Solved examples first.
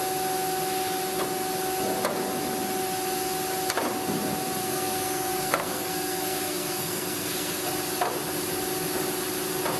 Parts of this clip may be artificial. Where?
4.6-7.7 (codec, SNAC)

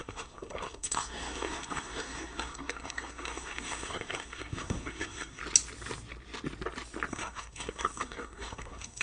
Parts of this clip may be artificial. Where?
0.0-5.4 (codec, SNAC); 7.1-9.0

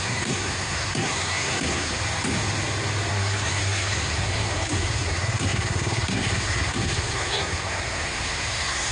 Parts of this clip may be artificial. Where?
0.0-2.0 (codec, SNAC); 3.1-8.9

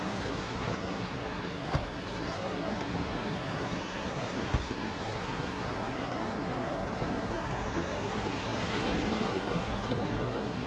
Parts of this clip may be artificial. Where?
0.0-10.7 (codec, SNAC)

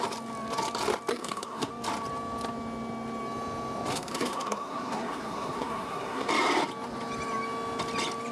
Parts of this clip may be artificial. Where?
1.1-1.7 (codec, SNAC); 3.9-6.3

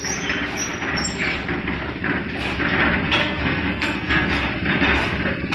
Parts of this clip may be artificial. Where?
3.2-4.3 (codec, SNAC)